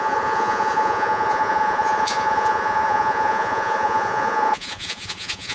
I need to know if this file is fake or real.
fake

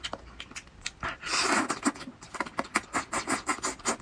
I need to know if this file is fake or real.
real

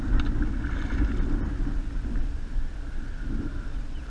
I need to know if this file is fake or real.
real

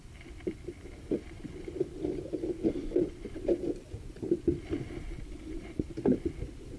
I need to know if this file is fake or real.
real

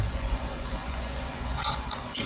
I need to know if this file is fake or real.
fake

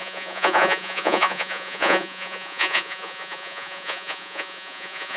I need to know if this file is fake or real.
fake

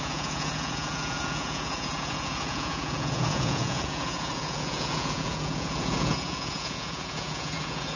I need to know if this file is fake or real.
fake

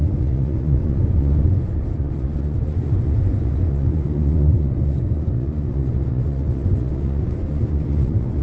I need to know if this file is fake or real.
fake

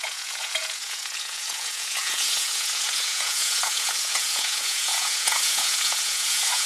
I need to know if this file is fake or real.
fake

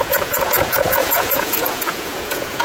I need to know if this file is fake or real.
fake